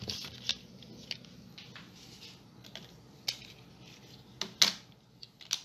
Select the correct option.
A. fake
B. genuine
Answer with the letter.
B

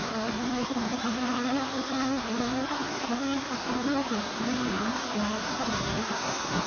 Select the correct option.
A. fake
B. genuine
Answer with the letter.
A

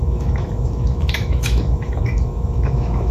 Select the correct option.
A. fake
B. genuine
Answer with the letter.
A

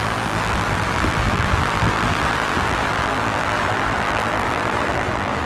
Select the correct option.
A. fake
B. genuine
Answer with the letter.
A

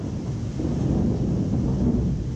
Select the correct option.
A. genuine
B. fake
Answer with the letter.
A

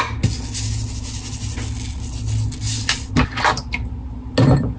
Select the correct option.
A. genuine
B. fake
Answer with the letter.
A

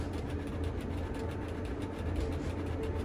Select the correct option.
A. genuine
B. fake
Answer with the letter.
A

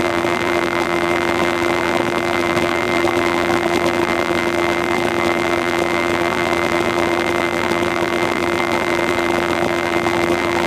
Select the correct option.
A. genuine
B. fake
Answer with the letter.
B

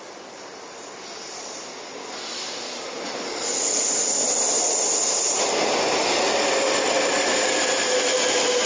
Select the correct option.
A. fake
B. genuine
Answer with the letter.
B